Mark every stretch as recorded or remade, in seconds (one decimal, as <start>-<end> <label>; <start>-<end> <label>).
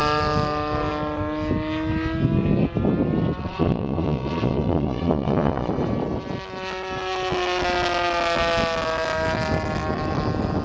0.0-3.4 recorded; 3.4-5.7 remade; 5.7-10.6 recorded